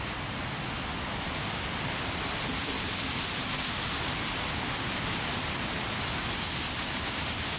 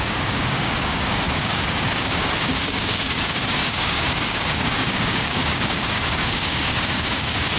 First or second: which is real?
first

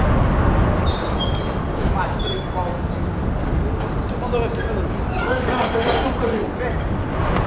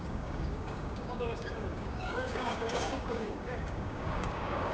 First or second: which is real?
first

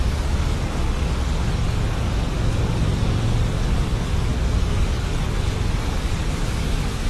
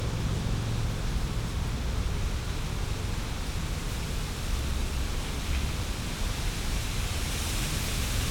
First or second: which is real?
second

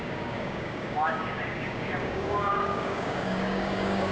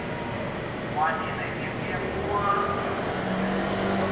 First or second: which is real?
second